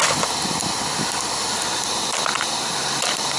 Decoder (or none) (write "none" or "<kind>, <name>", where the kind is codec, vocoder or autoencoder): none